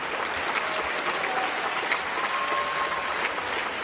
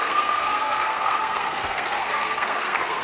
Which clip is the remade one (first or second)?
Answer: second